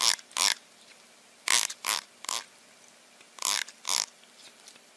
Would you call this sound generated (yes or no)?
no